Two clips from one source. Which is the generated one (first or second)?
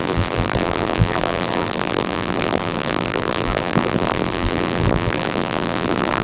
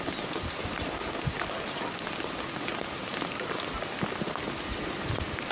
first